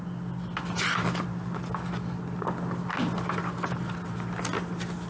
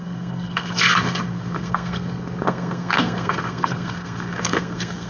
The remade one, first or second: second